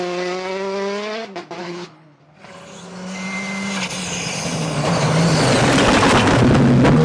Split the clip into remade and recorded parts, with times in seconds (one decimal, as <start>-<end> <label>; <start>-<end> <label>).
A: 0.0-1.6 recorded; 1.6-2.2 remade; 2.2-7.0 recorded